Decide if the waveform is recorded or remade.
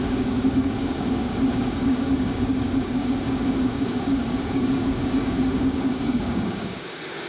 remade